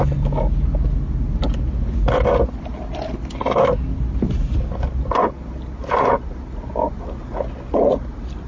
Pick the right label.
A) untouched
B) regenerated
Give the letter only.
A